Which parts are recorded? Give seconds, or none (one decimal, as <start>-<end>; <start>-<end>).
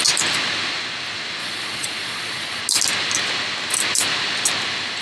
0.0-1.4; 2.6-5.0